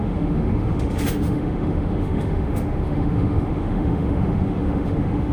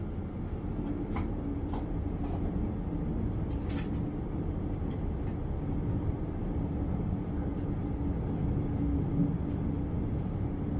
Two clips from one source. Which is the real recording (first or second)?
second